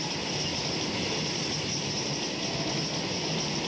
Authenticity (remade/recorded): recorded